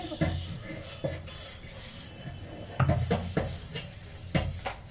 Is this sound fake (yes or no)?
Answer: no